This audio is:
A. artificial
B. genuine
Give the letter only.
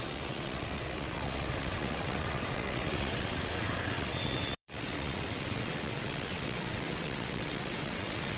A